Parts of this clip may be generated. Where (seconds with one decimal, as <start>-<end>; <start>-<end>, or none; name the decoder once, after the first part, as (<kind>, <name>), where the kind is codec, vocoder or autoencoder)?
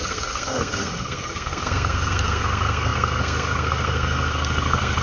0.0-5.0 (codec, SNAC)